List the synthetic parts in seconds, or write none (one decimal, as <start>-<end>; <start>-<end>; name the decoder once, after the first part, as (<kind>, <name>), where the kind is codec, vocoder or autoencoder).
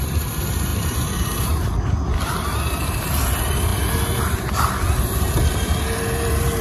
none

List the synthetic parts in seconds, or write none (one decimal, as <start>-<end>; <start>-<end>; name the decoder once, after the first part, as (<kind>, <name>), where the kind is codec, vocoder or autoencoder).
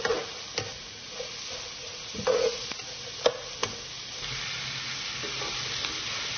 0.7-1.3 (vocoder, Vocos); 1.8-2.8